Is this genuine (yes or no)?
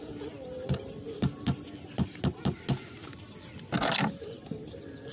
yes